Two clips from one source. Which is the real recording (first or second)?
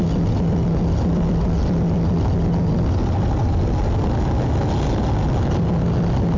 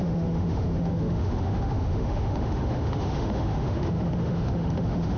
first